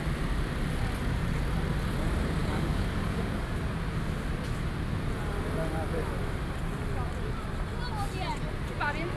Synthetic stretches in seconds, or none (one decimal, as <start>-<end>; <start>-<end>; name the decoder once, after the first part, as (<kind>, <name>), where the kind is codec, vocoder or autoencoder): 2.4-3.6 (codec, DAC)